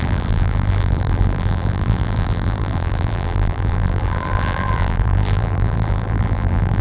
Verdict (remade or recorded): remade